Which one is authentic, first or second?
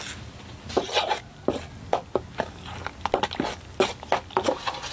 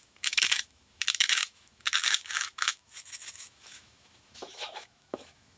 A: first